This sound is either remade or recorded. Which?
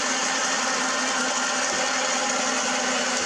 recorded